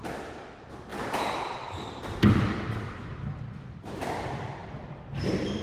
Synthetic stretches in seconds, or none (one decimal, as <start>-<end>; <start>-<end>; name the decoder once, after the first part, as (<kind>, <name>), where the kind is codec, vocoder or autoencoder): 0.0-5.6 (vocoder, BigVGAN v2)